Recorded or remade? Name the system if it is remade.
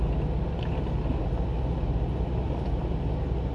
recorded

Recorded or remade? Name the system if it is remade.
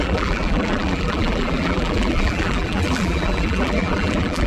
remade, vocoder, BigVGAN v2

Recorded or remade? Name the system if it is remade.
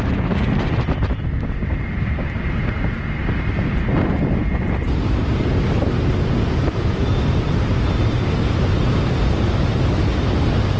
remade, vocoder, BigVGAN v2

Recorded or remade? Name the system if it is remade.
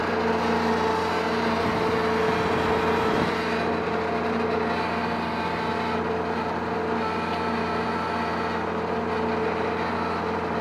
recorded